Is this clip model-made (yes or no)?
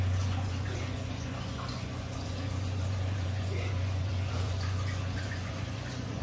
yes